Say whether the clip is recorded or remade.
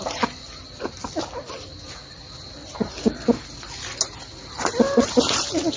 recorded